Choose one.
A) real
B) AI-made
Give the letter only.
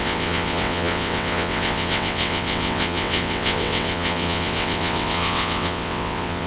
B